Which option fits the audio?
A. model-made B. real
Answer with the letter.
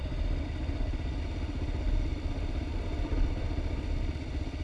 B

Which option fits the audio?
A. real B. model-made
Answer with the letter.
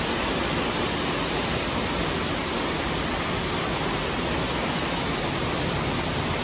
A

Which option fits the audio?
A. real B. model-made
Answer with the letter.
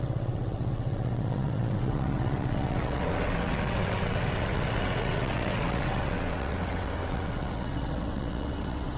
B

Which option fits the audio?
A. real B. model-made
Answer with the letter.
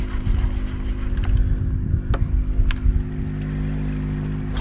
A